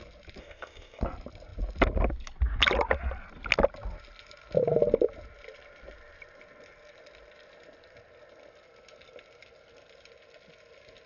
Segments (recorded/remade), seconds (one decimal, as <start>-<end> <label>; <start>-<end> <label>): 0.0-0.4 recorded; 0.4-1.0 remade; 1.0-11.1 recorded